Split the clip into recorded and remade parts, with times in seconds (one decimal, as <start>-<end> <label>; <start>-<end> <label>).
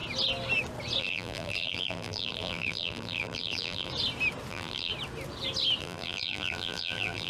0.0-1.0 recorded; 1.0-3.9 remade; 3.9-4.5 recorded; 4.5-4.9 remade; 4.9-5.8 recorded; 5.8-7.3 remade